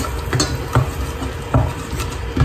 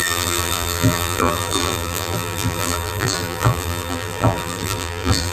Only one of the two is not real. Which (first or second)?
second